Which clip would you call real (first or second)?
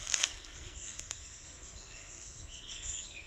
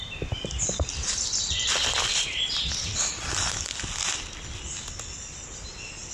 second